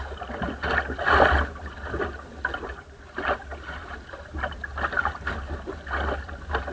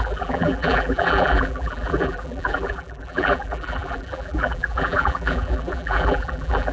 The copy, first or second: second